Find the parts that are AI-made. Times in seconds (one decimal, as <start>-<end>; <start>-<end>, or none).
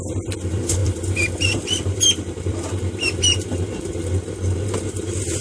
0.0-5.4